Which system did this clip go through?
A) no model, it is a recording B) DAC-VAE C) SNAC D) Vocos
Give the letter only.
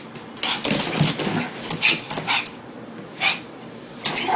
A